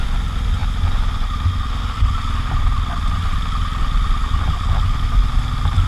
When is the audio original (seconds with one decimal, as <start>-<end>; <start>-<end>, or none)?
0.0-5.9